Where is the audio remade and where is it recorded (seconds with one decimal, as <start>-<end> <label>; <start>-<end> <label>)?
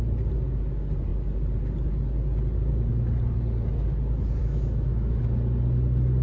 0.0-4.4 recorded; 4.4-5.2 remade; 5.2-6.2 recorded